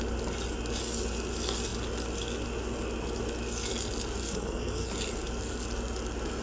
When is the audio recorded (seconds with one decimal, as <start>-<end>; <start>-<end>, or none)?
0.0-4.2; 4.9-6.4